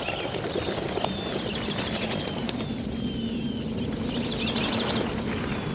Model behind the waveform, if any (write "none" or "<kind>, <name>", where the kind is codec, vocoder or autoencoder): none